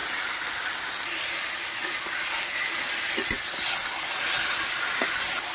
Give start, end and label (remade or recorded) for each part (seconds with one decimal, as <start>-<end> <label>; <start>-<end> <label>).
0.0-5.5 recorded